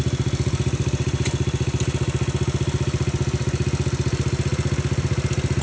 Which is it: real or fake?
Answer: real